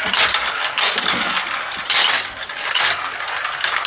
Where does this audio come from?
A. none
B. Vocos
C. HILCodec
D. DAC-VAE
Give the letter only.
A